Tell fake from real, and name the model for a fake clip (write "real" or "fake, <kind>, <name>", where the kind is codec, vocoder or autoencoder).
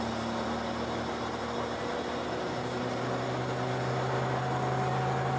real